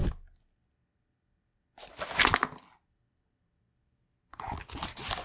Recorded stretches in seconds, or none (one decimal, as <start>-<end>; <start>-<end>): 0.0-5.2